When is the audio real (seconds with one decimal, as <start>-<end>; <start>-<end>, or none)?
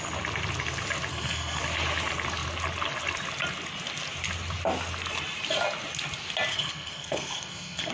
0.0-1.1; 1.6-6.5